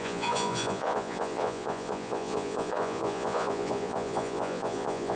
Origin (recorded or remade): remade